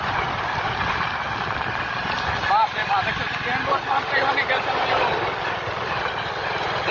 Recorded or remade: recorded